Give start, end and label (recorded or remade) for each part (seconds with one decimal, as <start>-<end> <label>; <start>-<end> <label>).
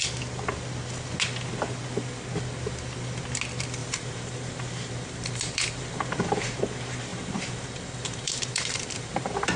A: 0.0-3.8 recorded; 3.8-6.6 remade; 6.6-7.1 recorded; 7.1-9.6 remade